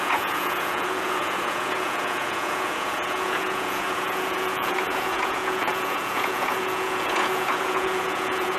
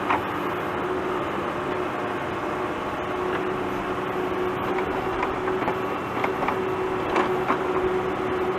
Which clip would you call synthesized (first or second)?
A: first